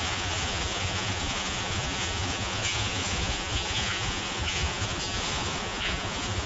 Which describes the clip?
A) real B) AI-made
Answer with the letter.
B